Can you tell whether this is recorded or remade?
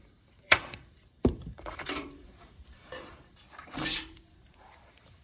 remade